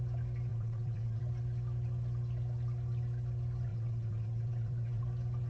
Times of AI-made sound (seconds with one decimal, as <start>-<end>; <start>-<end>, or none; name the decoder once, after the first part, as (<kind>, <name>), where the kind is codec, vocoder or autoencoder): 0.5-1.2 (vocoder, WaveNeXt); 3.7-5.0